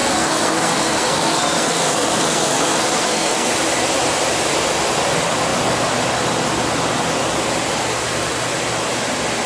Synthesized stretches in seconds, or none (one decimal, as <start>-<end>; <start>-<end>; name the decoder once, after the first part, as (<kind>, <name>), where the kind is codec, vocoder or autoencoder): 0.0-3.5 (codec, SNAC)

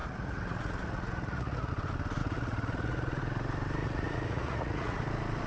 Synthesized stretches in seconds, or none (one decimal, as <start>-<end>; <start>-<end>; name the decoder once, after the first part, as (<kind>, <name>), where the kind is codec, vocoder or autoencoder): 0.0-1.7 (vocoder, Vocos); 2.2-3.2; 3.8-5.0